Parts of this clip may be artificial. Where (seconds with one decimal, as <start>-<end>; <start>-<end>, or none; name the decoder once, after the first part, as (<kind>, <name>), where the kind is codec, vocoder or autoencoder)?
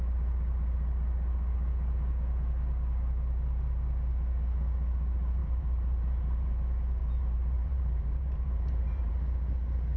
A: 5.4-6.5 (vocoder, BigVGAN v2); 7.0-9.1